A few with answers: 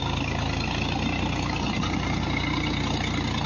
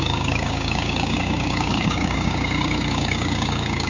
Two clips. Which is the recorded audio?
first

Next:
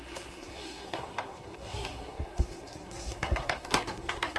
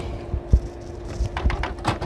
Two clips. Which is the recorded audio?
second